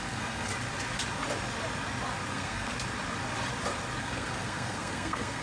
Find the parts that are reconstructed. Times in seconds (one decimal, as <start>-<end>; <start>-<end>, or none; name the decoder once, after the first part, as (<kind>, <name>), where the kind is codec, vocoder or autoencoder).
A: 0.0-0.5 (codec, SNAC); 2.3-2.7; 4.0-5.4